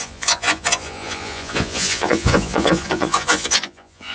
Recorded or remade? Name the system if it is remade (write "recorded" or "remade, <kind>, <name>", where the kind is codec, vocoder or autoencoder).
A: remade, vocoder, Vocos